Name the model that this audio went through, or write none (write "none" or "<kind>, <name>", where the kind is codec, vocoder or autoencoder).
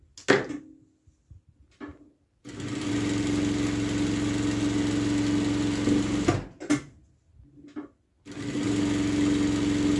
none